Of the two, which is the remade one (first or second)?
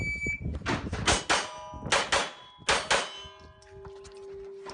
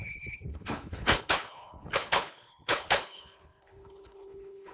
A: second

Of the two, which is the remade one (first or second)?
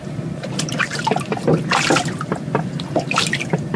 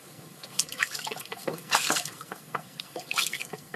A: second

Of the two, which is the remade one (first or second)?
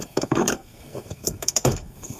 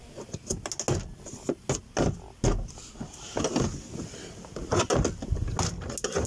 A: first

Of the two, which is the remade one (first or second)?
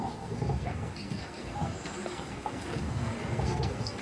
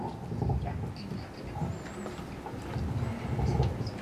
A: first